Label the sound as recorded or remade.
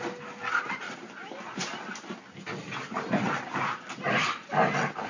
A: recorded